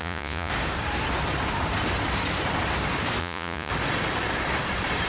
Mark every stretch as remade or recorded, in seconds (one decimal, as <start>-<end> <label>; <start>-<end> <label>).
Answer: 0.0-0.5 remade; 0.5-3.2 recorded; 3.2-3.7 remade; 3.7-5.1 recorded